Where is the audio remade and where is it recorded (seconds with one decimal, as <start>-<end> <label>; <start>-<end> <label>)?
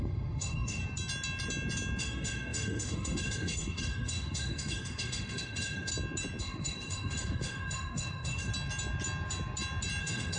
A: 0.0-0.8 remade; 0.8-2.0 recorded; 2.0-5.9 remade; 5.9-6.4 recorded; 6.4-8.5 remade; 8.5-10.0 recorded; 10.0-10.4 remade